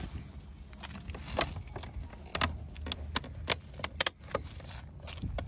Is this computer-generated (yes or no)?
no